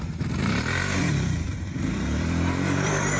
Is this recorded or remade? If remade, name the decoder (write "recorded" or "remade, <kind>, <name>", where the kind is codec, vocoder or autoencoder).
remade, vocoder, BigVGAN v2